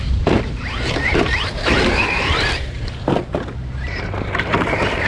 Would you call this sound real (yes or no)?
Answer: no